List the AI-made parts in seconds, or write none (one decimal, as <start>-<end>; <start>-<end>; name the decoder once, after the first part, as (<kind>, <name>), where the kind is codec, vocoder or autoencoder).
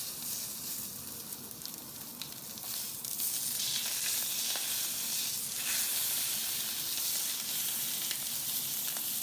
none